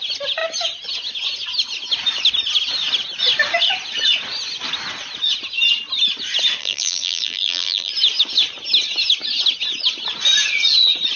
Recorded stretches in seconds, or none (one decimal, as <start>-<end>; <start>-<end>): 0.0-6.6; 7.9-11.2